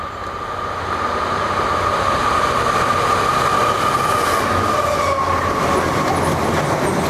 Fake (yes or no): no